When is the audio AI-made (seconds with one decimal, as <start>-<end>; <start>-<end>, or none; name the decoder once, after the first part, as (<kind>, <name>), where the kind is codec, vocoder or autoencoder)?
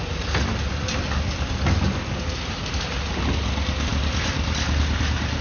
none